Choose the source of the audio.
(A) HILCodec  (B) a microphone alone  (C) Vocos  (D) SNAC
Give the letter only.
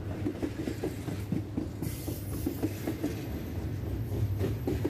B